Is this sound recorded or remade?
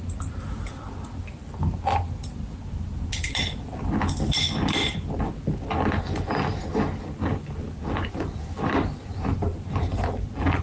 recorded